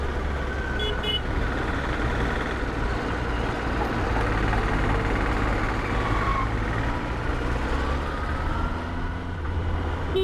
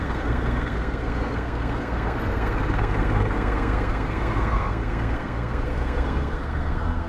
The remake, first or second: second